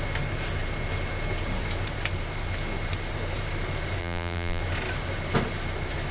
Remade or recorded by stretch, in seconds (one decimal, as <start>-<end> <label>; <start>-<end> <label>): 0.0-4.0 recorded; 4.0-4.6 remade; 4.6-6.1 recorded